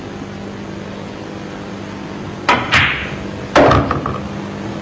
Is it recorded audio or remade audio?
recorded